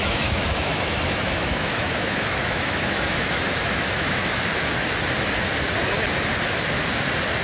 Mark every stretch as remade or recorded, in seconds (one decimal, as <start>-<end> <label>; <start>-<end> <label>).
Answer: 0.0-4.4 remade; 4.4-7.4 recorded

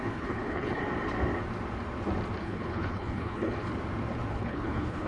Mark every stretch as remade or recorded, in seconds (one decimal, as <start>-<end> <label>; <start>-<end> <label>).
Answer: 0.0-0.8 remade; 0.8-2.4 recorded; 2.4-3.7 remade; 3.7-4.3 recorded; 4.3-5.1 remade

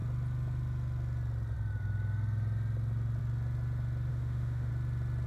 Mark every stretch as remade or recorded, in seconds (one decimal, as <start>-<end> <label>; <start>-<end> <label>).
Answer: 0.0-4.1 recorded; 4.1-4.7 remade; 4.7-5.3 recorded

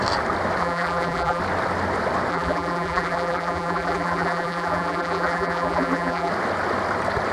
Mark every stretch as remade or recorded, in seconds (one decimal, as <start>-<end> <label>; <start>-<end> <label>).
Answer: 0.0-0.6 recorded; 0.6-1.4 remade; 1.4-2.3 recorded; 2.3-6.3 remade; 6.3-7.3 recorded

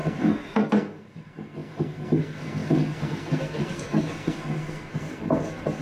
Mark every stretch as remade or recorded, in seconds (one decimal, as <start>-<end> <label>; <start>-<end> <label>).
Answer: 0.0-5.8 remade

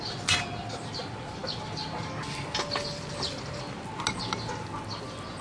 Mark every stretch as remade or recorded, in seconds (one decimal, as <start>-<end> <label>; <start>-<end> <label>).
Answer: 0.0-5.4 recorded

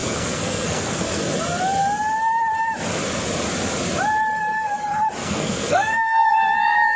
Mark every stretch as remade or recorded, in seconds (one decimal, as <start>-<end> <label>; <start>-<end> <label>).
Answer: 0.0-1.2 remade; 1.2-5.2 recorded; 5.2-6.3 remade; 6.3-7.0 recorded

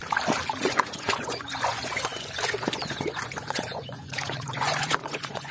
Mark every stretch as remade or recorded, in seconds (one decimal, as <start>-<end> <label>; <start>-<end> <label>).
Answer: 0.0-0.6 recorded; 0.6-5.5 remade